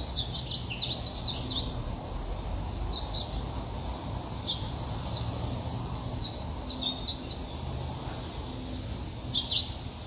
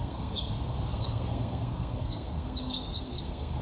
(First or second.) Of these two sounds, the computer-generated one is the second